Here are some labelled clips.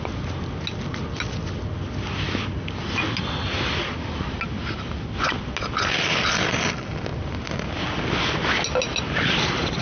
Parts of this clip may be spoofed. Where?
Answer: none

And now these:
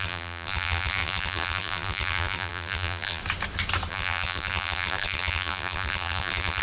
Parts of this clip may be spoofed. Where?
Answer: 0.0-3.2 (vocoder, BigVGAN v2); 3.9-6.6